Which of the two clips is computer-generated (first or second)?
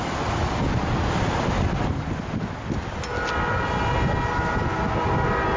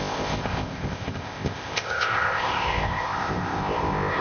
second